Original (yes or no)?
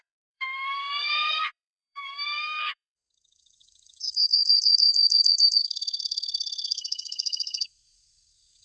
no